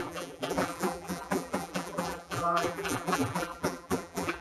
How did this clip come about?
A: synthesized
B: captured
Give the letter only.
A